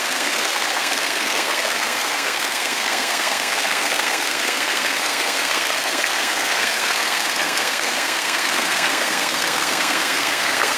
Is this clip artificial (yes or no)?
yes